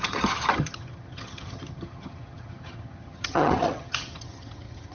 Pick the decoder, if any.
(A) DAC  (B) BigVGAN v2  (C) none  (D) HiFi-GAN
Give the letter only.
D